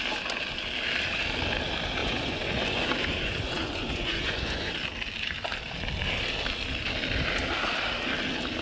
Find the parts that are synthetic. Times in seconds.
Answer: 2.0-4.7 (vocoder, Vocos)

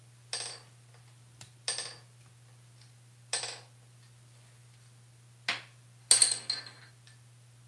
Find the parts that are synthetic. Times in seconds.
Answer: none